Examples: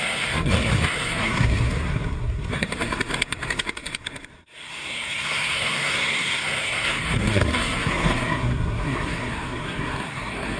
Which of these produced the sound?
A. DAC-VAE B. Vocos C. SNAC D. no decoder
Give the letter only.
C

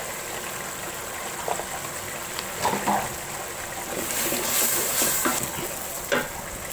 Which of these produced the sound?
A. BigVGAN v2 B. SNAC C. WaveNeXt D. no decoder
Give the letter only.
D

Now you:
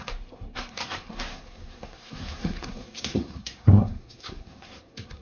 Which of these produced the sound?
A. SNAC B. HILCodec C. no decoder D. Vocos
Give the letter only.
A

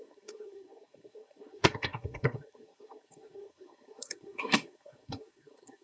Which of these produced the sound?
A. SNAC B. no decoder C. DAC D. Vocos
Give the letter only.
A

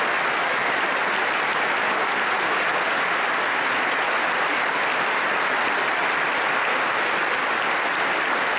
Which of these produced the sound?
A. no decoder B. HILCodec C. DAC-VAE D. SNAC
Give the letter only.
A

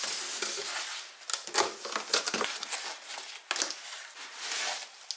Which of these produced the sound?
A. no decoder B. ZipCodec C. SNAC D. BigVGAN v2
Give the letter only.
A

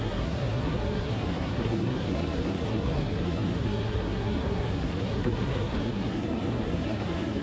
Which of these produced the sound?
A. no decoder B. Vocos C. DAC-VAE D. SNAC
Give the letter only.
D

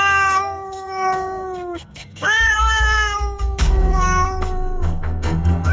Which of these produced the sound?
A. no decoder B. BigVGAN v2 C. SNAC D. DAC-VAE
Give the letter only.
C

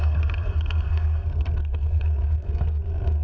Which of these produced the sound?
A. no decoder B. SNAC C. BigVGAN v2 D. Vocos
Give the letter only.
B